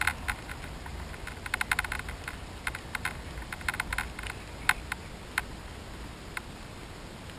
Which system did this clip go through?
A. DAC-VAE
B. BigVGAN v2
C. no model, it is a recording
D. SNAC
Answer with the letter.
C